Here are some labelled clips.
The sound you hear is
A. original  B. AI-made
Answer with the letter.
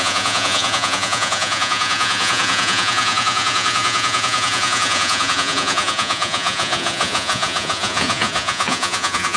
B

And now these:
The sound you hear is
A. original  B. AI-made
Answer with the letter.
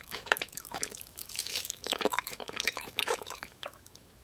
B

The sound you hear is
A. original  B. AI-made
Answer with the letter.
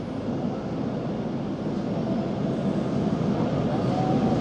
A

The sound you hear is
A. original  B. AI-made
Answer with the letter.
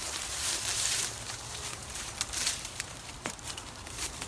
B